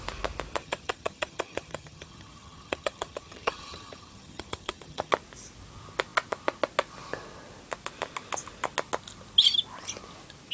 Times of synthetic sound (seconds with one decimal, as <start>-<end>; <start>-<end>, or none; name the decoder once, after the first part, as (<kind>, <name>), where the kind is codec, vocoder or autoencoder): 0.6-5.1 (vocoder, HiFi-GAN)